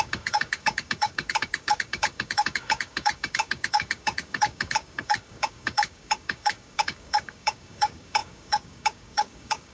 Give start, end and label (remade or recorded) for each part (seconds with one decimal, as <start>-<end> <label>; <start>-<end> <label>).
0.0-9.7 remade